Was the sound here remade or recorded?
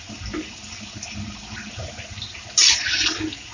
recorded